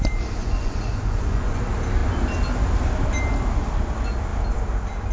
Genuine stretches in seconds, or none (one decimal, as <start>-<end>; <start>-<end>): 0.0-0.4; 1.6-5.1